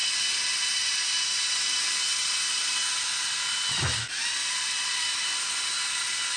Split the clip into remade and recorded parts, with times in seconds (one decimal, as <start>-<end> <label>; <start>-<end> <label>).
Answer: 0.0-6.4 recorded